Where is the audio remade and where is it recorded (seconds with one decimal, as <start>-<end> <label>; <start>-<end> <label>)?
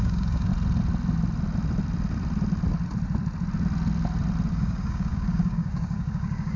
0.0-0.5 remade; 0.5-4.5 recorded; 4.5-6.6 remade